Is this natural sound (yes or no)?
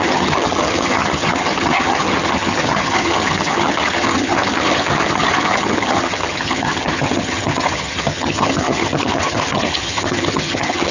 no